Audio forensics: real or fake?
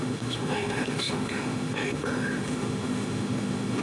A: fake